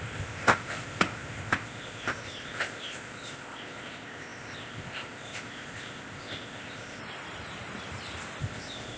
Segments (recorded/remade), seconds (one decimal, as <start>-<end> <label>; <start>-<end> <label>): 0.0-7.0 remade; 7.0-8.4 recorded; 8.4-9.0 remade